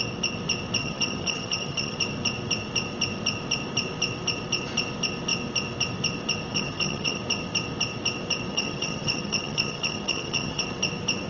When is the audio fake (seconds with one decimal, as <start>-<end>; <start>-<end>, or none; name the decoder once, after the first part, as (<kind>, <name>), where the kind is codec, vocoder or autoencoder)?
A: 0.8-2.0 (vocoder, HiFi-GAN); 6.5-7.2; 8.5-10.6